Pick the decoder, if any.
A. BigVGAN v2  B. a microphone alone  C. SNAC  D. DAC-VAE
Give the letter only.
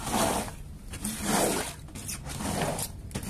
B